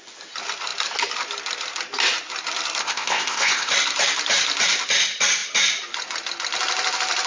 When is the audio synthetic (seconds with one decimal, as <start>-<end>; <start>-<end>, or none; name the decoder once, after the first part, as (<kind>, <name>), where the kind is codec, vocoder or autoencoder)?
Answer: 2.8-3.7 (codec, ZipCodec)